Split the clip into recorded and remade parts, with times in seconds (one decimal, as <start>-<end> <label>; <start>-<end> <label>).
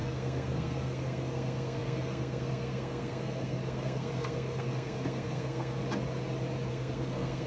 0.0-5.8 remade; 5.8-6.7 recorded; 6.7-7.5 remade